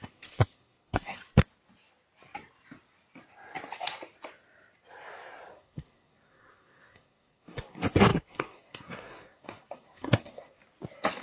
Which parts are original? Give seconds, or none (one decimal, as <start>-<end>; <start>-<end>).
1.2-5.5; 10.6-11.2